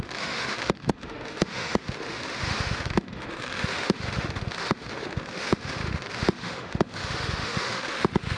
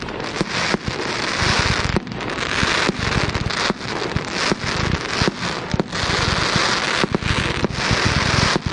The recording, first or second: second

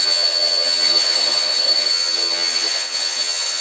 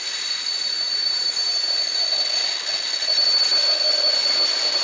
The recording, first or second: second